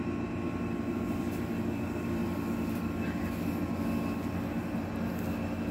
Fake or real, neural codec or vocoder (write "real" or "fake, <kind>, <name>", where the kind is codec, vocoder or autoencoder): real